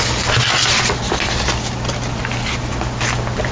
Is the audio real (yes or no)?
yes